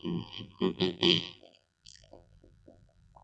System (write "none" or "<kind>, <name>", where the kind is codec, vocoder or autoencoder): vocoder, BigVGAN v2